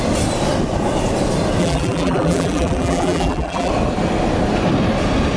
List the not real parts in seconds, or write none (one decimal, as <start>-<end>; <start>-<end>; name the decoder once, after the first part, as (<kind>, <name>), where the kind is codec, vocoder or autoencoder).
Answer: 1.6-3.7 (vocoder, BigVGAN v2)